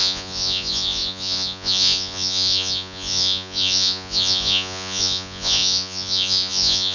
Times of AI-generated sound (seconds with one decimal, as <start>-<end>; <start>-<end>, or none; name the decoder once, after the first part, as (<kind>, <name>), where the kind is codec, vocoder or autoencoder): 0.0-6.9 (vocoder, Vocos)